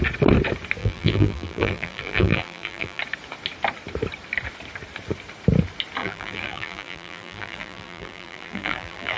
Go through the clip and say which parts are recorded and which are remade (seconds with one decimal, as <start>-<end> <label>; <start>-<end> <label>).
0.0-0.8 recorded; 0.8-3.0 remade; 3.0-6.0 recorded; 6.0-9.2 remade